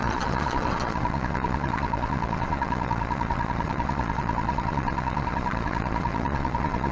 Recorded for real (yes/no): no